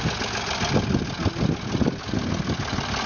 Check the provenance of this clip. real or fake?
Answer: real